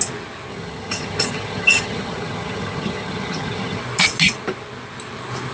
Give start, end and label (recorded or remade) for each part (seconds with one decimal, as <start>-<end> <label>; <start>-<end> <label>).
0.0-0.5 recorded; 0.5-3.8 remade; 3.8-5.5 recorded